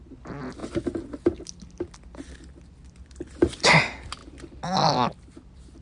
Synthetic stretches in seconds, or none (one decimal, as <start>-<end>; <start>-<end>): none